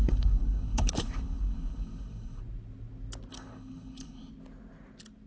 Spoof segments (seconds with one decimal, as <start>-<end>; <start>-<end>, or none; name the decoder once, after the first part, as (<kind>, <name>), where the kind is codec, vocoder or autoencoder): 0.0-2.4 (codec, HILCodec); 3.3-4.3